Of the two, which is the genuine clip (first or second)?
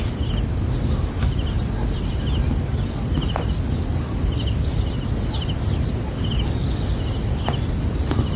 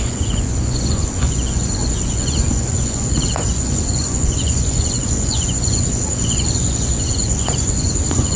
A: first